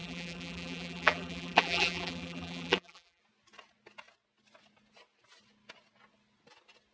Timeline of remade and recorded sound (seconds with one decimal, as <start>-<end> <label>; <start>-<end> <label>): 0.0-3.2 remade; 3.2-6.9 recorded